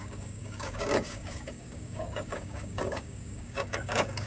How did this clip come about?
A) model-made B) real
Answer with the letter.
A